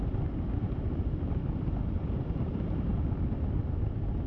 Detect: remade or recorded recorded